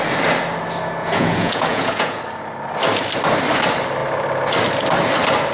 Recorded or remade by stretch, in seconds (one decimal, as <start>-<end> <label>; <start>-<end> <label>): 0.0-1.0 recorded; 1.0-2.2 remade; 2.2-5.5 recorded

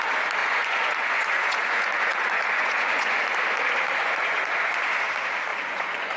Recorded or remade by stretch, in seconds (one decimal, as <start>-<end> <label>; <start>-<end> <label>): 0.0-0.4 recorded; 0.4-3.2 remade; 3.2-4.0 recorded; 4.0-4.9 remade; 4.9-5.5 recorded; 5.5-6.2 remade

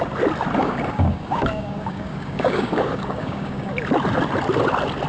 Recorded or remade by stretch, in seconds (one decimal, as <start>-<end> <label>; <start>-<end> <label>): 0.0-0.6 recorded; 0.6-3.7 remade; 3.7-5.1 recorded

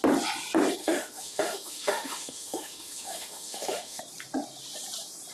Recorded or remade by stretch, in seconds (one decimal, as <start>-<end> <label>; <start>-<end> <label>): 0.0-0.8 recorded; 0.8-4.0 remade; 4.0-5.3 recorded

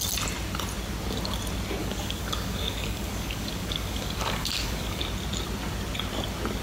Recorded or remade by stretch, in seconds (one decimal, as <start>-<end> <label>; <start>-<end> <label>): 0.0-1.8 recorded; 1.8-5.0 remade; 5.0-6.6 recorded